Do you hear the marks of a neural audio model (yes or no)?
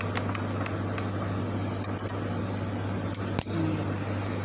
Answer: no